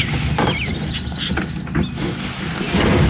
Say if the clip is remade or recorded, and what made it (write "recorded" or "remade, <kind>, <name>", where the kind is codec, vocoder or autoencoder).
recorded